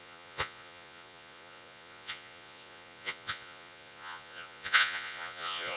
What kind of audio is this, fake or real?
fake